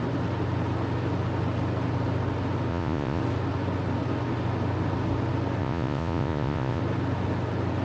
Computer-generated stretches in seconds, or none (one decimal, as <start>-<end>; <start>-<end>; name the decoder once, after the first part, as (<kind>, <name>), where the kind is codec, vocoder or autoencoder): 2.7-3.2 (vocoder, Vocos); 5.6-6.8